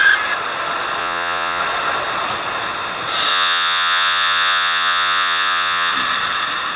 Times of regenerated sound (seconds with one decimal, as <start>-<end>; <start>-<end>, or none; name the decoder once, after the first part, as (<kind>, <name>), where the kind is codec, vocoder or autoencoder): 1.0-1.6 (vocoder, Vocos); 3.3-5.9